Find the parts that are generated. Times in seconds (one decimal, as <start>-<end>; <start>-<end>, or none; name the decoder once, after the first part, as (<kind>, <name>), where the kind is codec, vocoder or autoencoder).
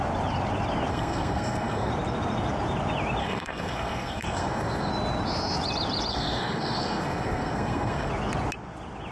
0.9-1.9 (codec, SNAC); 3.2-4.9; 6.1-8.1